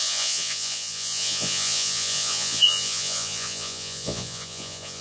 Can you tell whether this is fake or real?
fake